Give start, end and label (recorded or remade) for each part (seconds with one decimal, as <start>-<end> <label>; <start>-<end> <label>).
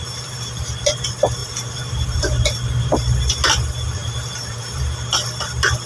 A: 0.0-0.8 remade; 0.8-1.4 recorded; 1.4-2.2 remade; 2.2-4.0 recorded; 4.0-4.8 remade; 4.8-5.9 recorded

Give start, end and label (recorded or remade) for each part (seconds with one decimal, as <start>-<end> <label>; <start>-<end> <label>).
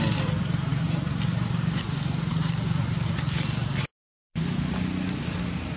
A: 0.0-5.8 remade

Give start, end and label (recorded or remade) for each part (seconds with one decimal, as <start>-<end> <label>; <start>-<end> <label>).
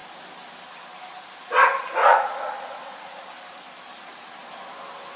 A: 0.0-2.0 recorded; 2.0-3.3 remade; 3.3-5.2 recorded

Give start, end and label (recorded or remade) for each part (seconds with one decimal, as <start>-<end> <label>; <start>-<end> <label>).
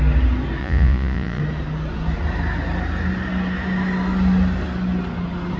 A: 0.0-0.6 recorded; 0.6-1.4 remade; 1.4-5.6 recorded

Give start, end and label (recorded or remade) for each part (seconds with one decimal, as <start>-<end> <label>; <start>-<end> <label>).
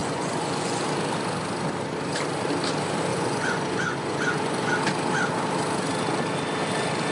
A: 0.0-0.8 remade; 0.8-3.1 recorded; 3.1-4.7 remade; 4.7-7.1 recorded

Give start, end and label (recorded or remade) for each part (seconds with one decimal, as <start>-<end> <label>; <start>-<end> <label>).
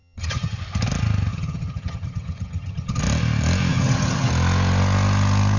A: 0.0-0.6 remade; 0.6-1.3 recorded; 1.3-3.0 remade; 3.0-3.7 recorded; 3.7-4.3 remade; 4.3-5.6 recorded